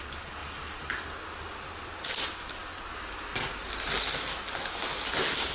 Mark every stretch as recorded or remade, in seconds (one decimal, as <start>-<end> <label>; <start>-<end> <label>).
0.0-5.5 recorded